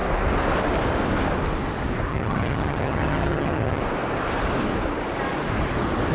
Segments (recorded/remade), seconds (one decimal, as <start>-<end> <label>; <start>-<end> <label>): 0.0-2.1 recorded; 2.1-3.8 remade; 3.8-6.1 recorded

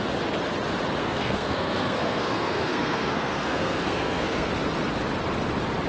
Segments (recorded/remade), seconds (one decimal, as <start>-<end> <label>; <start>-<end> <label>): 0.0-1.0 recorded; 1.0-4.5 remade; 4.5-5.9 recorded